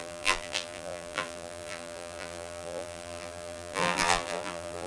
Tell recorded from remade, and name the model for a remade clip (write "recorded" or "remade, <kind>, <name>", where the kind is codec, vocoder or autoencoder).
remade, vocoder, BigVGAN v2